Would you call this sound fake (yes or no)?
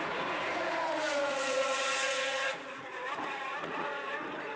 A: yes